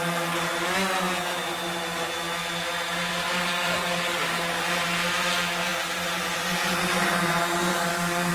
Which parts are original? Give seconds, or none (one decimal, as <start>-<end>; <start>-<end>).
0.0-3.1; 4.6-7.7